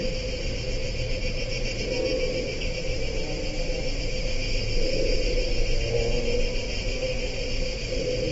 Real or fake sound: real